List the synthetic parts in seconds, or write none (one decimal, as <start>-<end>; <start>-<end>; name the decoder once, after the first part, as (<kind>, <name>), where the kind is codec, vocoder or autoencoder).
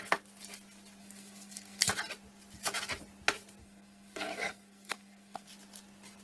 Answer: 1.0-1.9 (codec, SNAC); 3.6-5.5